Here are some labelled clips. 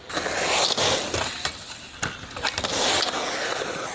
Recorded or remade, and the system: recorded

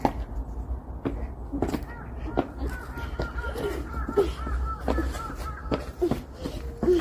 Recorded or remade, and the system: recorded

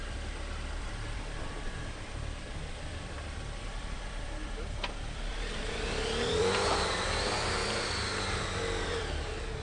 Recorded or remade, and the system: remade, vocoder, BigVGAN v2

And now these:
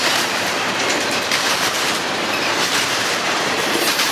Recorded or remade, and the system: remade, vocoder, BigVGAN v2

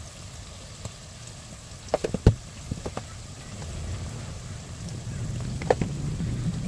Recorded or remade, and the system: recorded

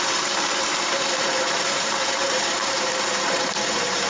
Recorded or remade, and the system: remade, vocoder, BigVGAN v2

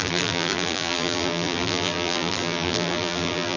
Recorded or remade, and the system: remade, vocoder, BigVGAN v2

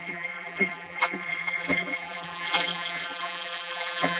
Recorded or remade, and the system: remade, vocoder, BigVGAN v2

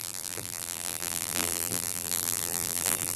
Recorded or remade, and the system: remade, vocoder, BigVGAN v2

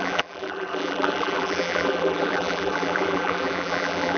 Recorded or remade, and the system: remade, vocoder, BigVGAN v2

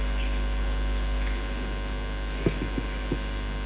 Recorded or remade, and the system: recorded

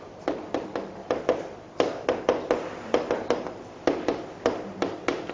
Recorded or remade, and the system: recorded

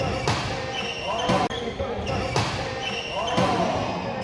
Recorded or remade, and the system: recorded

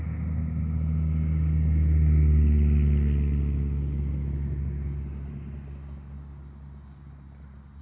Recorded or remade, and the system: recorded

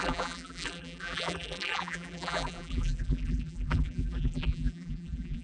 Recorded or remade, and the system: remade, vocoder, BigVGAN v2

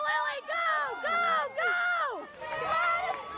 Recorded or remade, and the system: recorded